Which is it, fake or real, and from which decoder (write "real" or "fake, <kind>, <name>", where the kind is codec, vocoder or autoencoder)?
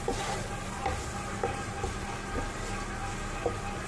real